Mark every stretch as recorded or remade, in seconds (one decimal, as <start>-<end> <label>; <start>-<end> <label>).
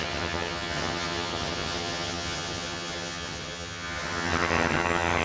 0.0-5.2 remade